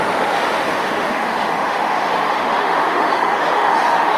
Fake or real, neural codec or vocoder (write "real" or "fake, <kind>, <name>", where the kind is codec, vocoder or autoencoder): fake, autoencoder, DAC-VAE